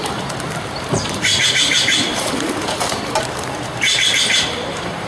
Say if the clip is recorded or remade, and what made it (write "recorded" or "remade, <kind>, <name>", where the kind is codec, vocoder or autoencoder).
remade, vocoder, BigVGAN v2